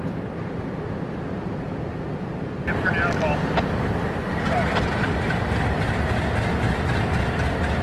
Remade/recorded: recorded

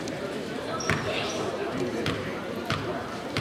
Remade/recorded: remade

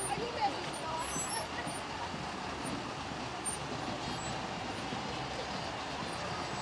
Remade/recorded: recorded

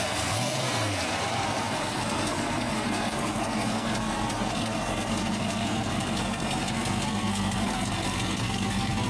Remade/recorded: remade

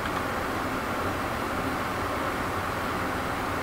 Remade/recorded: recorded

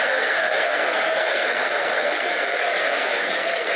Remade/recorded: remade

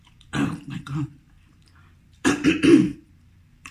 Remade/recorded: remade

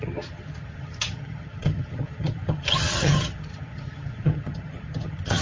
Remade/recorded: remade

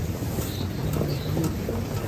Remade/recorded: recorded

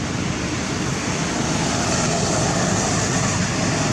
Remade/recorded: recorded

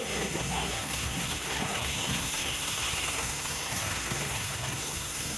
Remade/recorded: remade